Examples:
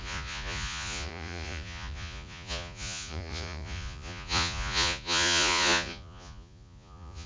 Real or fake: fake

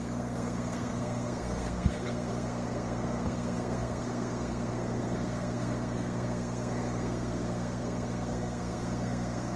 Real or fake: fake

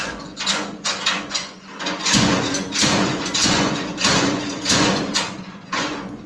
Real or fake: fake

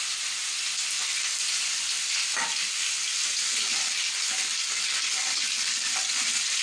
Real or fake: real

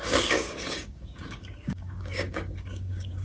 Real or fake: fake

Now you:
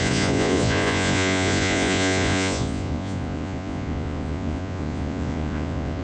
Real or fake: fake